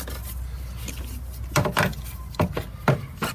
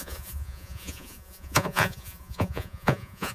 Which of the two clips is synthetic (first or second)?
second